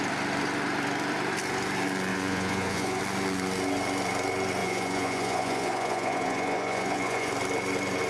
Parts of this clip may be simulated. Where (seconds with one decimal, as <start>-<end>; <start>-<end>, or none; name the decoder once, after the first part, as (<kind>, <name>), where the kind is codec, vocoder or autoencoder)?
2.1-3.0 (vocoder, Vocos); 4.6-7.3